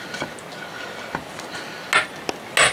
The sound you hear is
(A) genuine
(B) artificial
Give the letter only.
A